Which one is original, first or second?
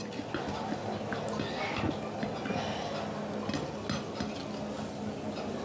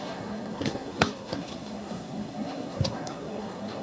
first